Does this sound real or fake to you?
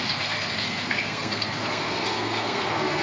fake